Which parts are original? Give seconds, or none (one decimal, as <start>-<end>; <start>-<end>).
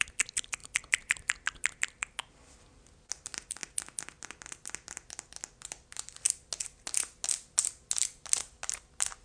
0.0-9.2